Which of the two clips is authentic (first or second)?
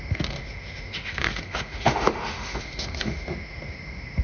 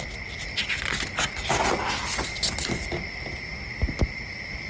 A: second